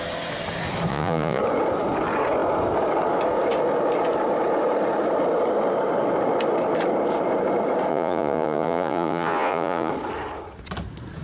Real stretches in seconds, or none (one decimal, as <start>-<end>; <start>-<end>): 0.0-0.9; 1.4-7.9; 9.9-11.2